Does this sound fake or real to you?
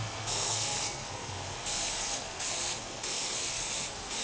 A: fake